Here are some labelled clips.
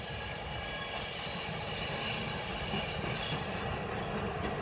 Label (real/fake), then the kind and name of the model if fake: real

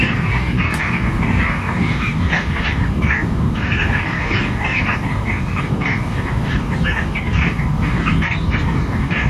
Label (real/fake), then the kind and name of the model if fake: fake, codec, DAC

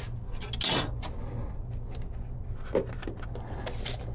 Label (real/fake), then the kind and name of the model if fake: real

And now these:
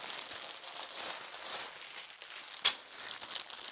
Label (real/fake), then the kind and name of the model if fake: real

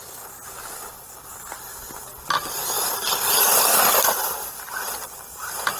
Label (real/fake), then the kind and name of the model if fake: real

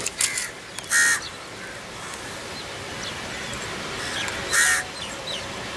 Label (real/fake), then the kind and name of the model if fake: real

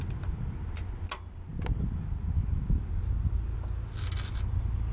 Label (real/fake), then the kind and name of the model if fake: real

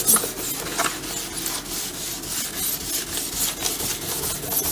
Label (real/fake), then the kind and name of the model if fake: real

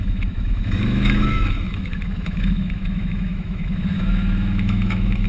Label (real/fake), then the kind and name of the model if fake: fake, autoencoder, DAC-VAE